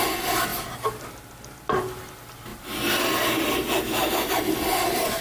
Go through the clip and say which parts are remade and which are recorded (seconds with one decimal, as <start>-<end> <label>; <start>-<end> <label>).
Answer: 0.0-0.5 recorded; 0.5-1.8 remade; 1.8-2.5 recorded; 2.5-4.4 remade; 4.4-5.2 recorded